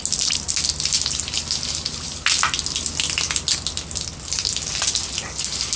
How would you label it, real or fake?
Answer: real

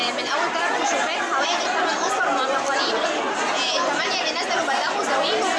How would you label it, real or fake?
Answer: real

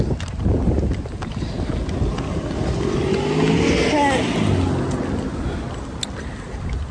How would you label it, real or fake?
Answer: real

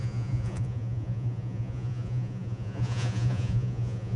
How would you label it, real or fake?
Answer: fake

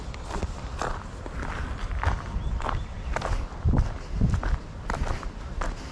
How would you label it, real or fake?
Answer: real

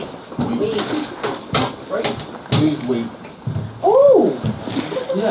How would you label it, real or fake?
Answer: real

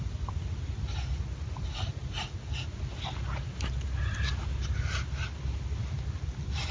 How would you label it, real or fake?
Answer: real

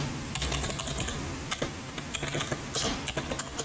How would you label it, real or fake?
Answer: real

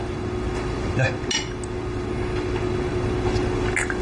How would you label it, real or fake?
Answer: real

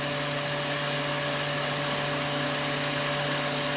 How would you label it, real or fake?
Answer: real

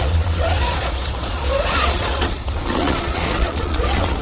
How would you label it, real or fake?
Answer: fake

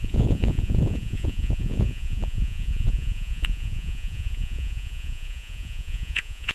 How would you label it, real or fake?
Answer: fake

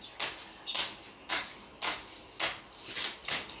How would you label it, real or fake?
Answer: real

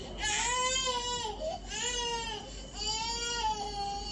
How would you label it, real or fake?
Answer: real